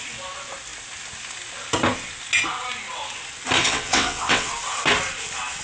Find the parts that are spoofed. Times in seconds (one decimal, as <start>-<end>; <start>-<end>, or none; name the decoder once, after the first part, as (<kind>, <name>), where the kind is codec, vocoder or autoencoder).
3.6-4.5 (vocoder, WaveNeXt)